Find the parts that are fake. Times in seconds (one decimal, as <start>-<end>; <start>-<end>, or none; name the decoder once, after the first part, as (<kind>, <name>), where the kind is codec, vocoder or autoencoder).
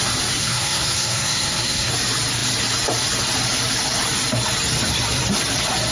0.4-1.9 (codec, SNAC)